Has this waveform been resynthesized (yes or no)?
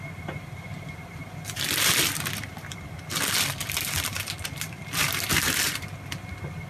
yes